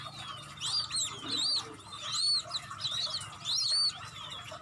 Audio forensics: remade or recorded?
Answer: recorded